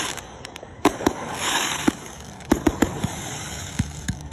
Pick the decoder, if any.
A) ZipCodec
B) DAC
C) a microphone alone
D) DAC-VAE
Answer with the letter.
B